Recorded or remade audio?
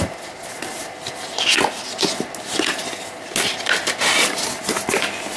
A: recorded